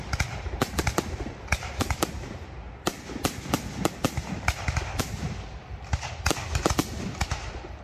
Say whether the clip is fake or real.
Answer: real